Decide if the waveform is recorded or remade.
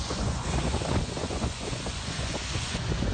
remade